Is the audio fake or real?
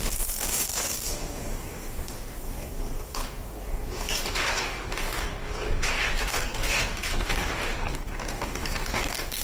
fake